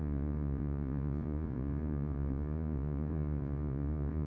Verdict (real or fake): fake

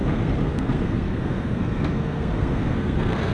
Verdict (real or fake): fake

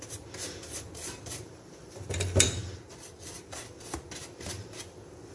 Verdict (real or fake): real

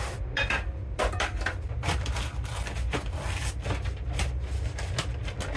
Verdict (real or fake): real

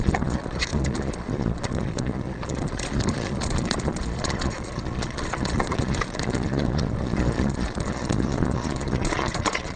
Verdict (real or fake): fake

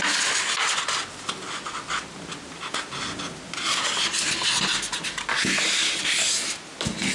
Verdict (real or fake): real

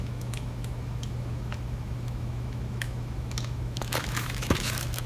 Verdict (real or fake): fake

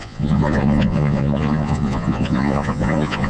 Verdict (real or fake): fake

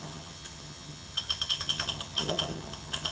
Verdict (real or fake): fake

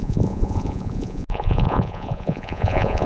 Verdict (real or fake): fake